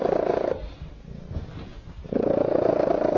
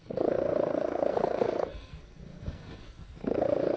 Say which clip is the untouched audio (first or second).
first